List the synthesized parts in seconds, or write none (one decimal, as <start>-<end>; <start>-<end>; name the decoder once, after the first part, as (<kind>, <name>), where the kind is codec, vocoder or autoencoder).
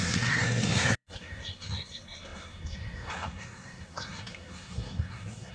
0.0-5.5 (codec, SNAC)